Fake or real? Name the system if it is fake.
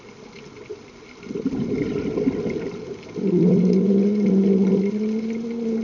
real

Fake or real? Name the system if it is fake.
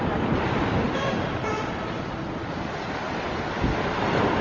real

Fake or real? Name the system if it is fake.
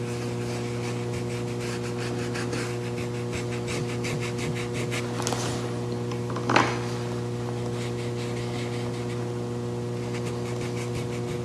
real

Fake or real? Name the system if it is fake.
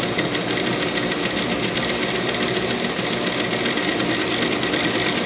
real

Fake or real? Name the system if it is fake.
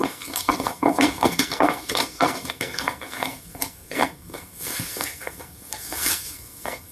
fake, codec, SNAC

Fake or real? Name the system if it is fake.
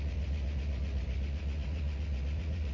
fake, vocoder, Vocos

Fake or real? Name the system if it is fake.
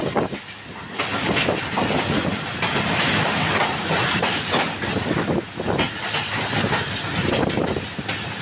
real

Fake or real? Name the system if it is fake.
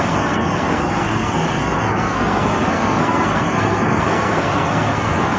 fake, codec, SNAC